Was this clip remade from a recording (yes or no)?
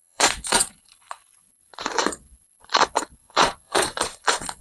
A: yes